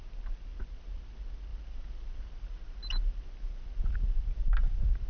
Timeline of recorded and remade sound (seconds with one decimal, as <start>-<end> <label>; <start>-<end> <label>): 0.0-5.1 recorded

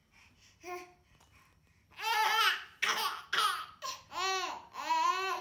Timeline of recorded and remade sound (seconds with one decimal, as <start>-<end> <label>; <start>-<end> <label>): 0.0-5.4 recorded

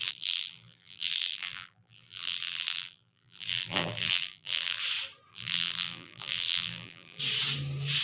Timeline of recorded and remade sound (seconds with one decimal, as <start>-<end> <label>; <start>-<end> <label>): 0.0-4.8 remade; 4.8-5.3 recorded; 5.3-7.2 remade; 7.2-8.0 recorded

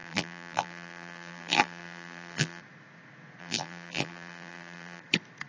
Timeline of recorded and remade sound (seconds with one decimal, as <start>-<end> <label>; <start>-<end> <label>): 0.0-2.6 remade; 2.6-3.4 recorded; 3.4-5.0 remade; 5.0-5.5 recorded